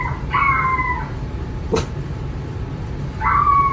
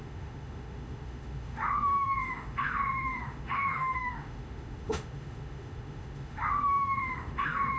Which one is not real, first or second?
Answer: second